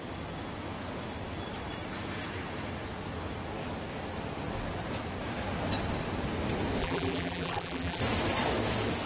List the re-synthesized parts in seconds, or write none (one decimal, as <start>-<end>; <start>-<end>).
6.8-8.0